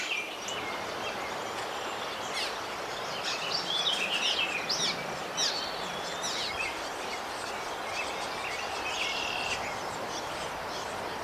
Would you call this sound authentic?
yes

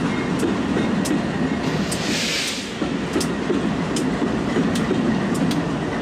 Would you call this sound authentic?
yes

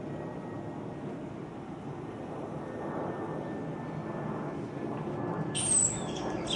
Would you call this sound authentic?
yes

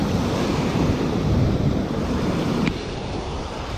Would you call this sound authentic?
no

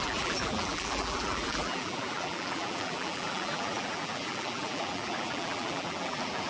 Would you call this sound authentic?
no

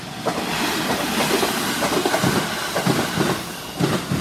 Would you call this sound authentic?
yes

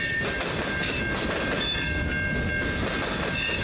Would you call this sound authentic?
yes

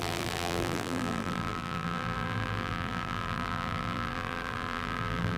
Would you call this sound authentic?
no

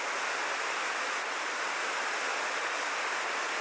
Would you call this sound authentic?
yes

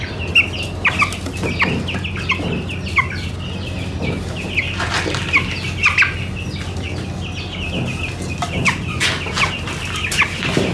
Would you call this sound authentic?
yes